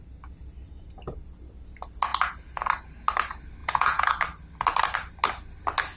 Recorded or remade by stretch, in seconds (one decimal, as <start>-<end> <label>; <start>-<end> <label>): 0.0-3.6 recorded; 3.6-4.1 remade; 4.1-6.0 recorded